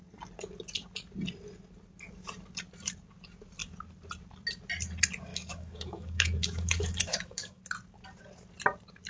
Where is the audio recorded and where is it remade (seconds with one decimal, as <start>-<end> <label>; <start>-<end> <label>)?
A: 0.0-5.3 recorded; 5.3-7.6 remade; 7.6-9.1 recorded